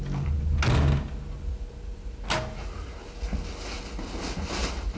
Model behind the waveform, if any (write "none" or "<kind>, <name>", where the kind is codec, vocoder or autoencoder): none